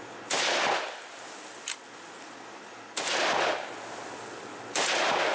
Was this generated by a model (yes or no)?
no